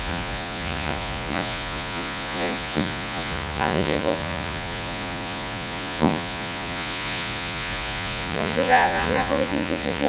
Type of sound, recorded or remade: remade